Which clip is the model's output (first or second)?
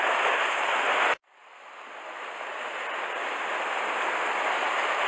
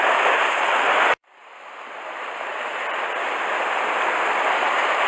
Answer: second